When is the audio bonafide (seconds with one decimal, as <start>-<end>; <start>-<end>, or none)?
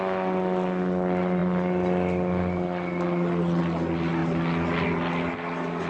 0.0-5.9